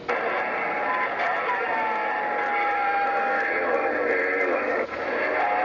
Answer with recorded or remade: recorded